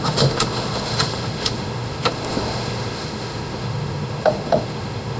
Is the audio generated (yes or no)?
yes